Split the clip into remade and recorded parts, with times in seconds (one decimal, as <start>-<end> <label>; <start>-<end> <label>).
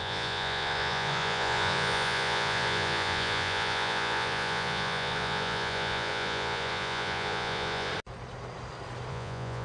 0.0-7.9 remade; 7.9-9.1 recorded; 9.1-9.6 remade